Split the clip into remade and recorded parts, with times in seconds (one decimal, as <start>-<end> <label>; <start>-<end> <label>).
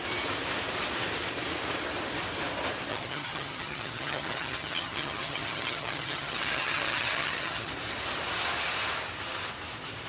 0.0-2.9 recorded; 2.9-7.7 remade; 7.7-10.1 recorded